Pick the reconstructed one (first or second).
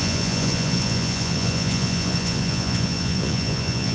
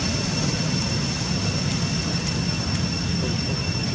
first